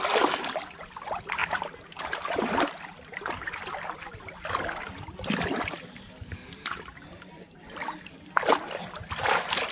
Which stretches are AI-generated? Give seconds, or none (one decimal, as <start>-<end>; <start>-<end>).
none

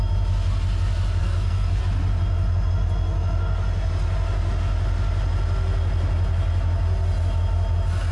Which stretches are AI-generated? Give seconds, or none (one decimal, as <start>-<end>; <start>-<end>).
1.2-1.8

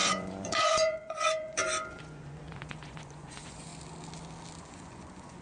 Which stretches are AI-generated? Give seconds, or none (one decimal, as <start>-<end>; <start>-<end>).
0.0-3.7; 4.6-5.4

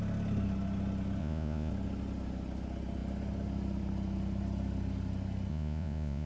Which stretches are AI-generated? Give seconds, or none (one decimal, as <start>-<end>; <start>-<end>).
1.2-1.7; 5.5-6.3

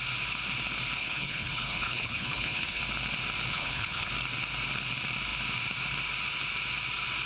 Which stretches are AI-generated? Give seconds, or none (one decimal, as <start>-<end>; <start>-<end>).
1.0-2.8; 3.5-4.1

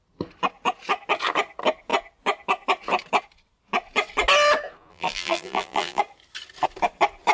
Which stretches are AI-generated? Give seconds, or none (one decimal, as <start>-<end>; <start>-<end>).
4.9-6.0

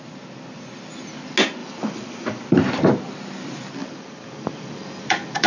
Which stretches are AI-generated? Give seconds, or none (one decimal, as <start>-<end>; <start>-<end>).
1.6-2.4; 3.8-5.5

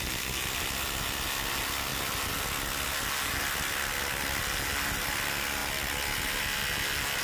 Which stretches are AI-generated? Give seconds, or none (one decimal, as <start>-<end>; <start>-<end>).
none